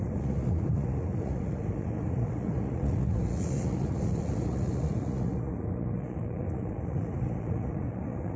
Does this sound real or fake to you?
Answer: fake